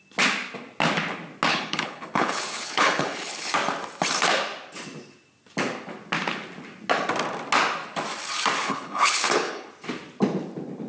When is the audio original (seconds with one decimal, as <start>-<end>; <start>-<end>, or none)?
0.0-1.5; 3.5-8.6; 9.7-10.9